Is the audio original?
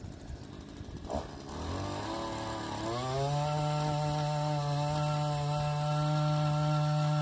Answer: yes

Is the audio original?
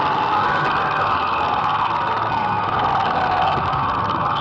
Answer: no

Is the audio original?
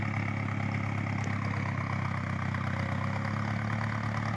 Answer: yes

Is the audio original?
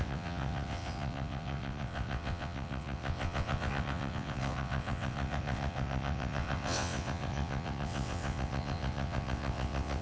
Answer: no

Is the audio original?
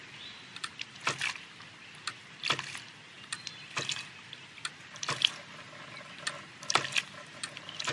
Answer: yes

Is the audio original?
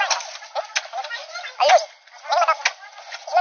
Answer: yes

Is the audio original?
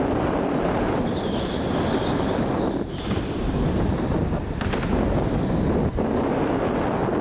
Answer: yes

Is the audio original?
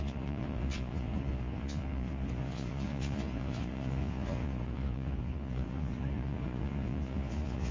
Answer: no